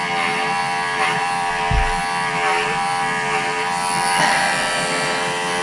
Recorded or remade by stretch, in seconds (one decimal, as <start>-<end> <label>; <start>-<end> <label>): 0.0-0.6 recorded; 0.6-1.5 remade; 1.5-2.0 recorded; 2.0-5.6 remade